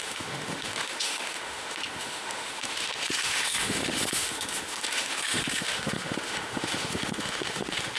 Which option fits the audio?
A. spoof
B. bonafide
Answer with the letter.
A